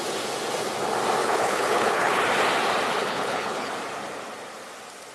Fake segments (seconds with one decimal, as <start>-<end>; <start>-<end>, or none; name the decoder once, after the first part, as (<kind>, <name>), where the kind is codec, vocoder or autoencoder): 1.2-2.2 (codec, HILCodec); 2.9-3.7

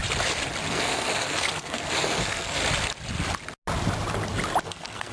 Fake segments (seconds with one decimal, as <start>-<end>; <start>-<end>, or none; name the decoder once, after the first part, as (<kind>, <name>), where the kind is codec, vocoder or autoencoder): 0.7-2.6 (codec, SNAC); 4.6-5.1

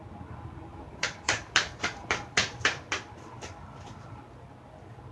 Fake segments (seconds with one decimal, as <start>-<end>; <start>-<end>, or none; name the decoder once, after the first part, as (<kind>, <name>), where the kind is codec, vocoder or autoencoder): 0.7-3.1 (vocoder, BigVGAN v2)

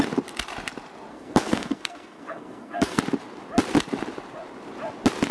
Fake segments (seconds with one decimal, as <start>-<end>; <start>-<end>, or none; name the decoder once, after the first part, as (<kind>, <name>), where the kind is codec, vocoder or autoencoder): 1.1-3.0 (codec, SNAC)

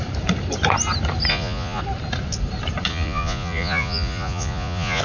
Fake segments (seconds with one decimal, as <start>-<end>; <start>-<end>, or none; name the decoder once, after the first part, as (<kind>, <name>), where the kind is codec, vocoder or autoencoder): 1.3-1.8 (vocoder, Vocos); 2.9-5.0